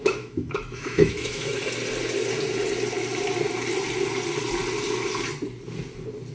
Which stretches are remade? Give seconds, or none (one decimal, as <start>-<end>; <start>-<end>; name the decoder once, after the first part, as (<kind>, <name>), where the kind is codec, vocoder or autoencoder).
0.0-1.6 (autoencoder, DAC-VAE)